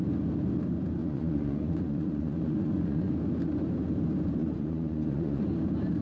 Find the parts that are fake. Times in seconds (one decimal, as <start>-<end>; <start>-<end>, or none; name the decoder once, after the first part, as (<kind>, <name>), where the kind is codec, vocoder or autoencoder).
1.0-3.1 (vocoder, Vocos); 4.4-5.4